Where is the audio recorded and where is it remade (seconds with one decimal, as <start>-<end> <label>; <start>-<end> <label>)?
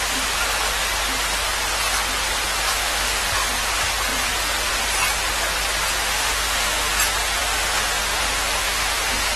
0.0-2.7 recorded; 2.7-3.3 remade; 3.3-6.0 recorded; 6.0-7.0 remade; 7.0-7.4 recorded; 7.4-9.4 remade